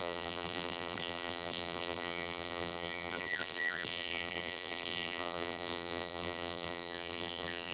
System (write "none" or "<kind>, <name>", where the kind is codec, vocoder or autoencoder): vocoder, BigVGAN v2